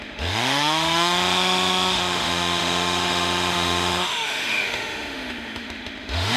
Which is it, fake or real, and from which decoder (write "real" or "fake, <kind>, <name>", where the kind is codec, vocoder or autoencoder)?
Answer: fake, autoencoder, DAC-VAE